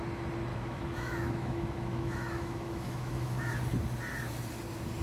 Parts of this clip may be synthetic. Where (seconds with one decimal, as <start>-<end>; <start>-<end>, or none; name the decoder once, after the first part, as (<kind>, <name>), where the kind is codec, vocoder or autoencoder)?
0.5-3.5 (autoencoder, DAC-VAE)